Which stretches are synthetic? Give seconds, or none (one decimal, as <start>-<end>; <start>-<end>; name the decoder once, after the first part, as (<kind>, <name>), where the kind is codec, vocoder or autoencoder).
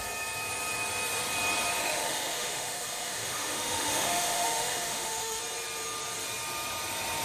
1.8-5.4 (autoencoder, DAC-VAE)